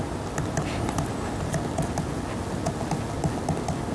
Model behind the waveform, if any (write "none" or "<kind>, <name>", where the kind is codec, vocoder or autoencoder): none